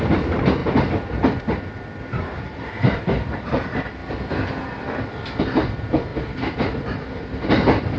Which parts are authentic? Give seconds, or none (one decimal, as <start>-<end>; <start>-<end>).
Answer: 0.6-1.1; 4.0-5.4; 6.1-6.8